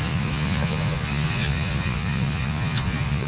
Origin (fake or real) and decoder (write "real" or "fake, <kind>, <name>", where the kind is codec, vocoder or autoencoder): fake, vocoder, Vocos